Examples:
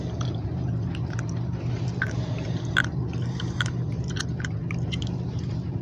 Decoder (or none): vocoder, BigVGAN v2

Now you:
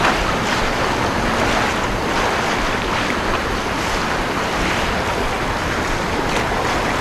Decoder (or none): none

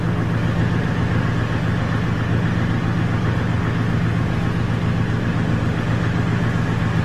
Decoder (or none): none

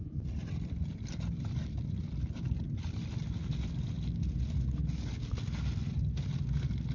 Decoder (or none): none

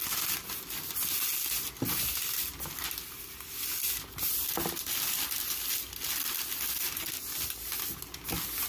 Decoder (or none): none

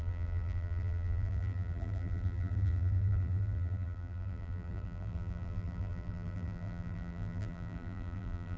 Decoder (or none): vocoder, BigVGAN v2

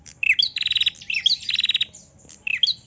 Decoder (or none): none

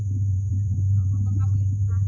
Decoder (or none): vocoder, BigVGAN v2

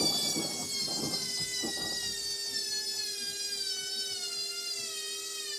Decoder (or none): none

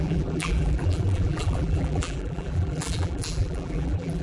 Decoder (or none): vocoder, BigVGAN v2